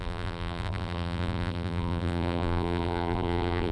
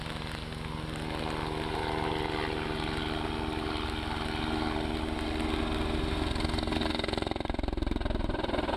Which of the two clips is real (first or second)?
second